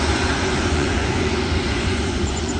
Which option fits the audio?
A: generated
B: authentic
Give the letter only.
A